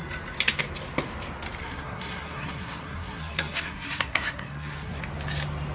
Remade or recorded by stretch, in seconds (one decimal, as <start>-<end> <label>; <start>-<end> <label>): 0.0-1.6 recorded; 1.6-5.0 remade; 5.0-5.7 recorded